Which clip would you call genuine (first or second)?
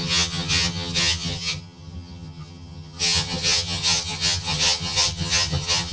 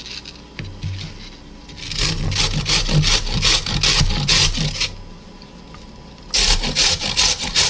second